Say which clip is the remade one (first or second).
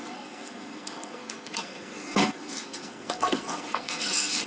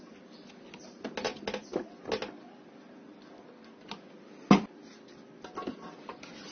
first